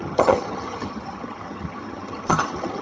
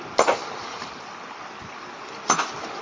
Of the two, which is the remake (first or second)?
first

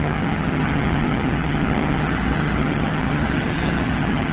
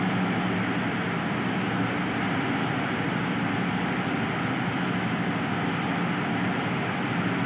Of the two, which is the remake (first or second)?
first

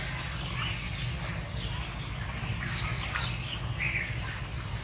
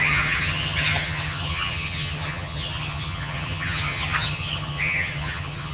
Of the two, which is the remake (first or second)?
second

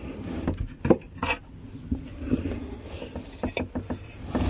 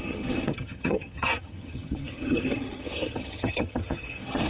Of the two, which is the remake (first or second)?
second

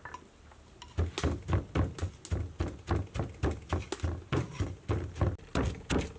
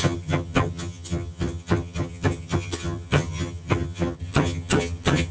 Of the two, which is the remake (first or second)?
second